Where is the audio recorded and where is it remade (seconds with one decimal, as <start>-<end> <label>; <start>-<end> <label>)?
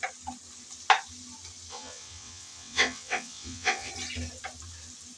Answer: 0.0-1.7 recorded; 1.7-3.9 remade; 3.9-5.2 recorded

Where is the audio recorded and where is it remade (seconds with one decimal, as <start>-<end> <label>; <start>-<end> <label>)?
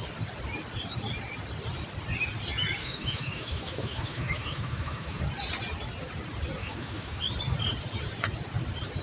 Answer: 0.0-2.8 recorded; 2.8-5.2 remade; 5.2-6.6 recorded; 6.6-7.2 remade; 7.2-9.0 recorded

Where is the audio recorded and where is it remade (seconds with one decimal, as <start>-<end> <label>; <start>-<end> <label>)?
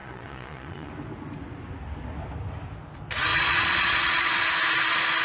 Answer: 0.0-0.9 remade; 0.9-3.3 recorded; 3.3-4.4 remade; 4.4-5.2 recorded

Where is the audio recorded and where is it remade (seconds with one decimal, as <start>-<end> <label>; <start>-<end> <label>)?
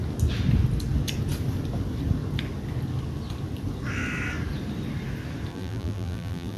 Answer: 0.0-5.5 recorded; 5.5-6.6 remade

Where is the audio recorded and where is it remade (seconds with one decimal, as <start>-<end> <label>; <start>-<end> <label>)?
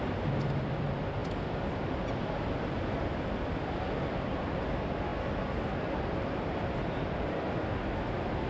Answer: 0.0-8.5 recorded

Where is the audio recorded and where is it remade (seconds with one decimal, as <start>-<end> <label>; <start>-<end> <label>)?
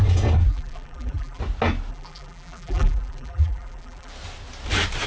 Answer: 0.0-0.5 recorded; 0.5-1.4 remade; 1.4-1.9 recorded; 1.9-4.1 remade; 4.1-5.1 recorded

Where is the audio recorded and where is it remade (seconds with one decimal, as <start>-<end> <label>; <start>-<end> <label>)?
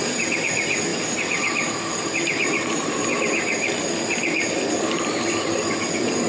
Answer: 0.0-6.3 recorded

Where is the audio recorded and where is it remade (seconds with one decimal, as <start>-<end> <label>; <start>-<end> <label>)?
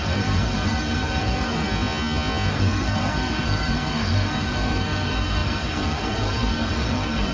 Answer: 0.0-1.7 remade; 1.7-2.5 recorded; 2.5-7.3 remade